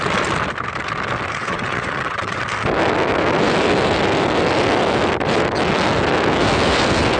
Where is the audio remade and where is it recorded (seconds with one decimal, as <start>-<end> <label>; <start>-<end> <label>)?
0.0-1.4 recorded; 1.4-2.4 remade; 2.4-7.2 recorded